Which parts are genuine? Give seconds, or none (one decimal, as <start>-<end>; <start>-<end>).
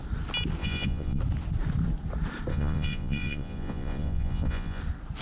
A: 0.0-0.6; 1.2-2.5; 4.8-5.2